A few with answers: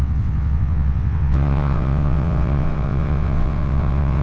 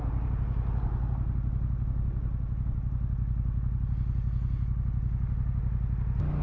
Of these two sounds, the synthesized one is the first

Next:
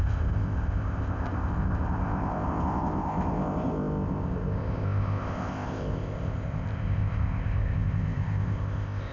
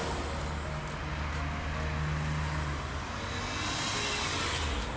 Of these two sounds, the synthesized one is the first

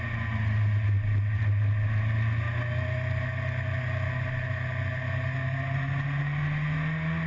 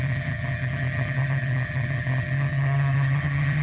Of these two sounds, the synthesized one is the second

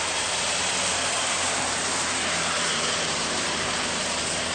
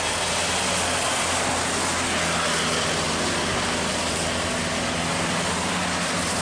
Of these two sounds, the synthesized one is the first